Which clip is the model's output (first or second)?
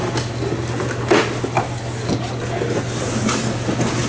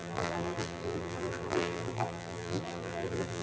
second